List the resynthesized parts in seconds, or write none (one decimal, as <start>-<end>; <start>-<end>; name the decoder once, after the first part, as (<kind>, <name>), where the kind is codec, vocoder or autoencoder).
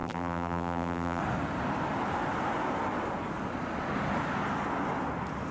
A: 0.0-1.2 (vocoder, BigVGAN v2)